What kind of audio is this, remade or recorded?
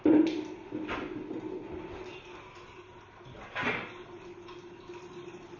recorded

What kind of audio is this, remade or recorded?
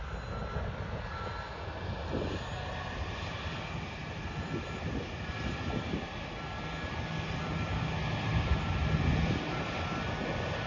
recorded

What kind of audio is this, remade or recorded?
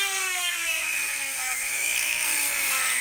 remade